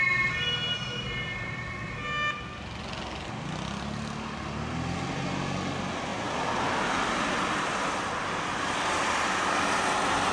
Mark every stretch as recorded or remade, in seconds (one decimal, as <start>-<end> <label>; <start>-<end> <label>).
0.0-10.3 recorded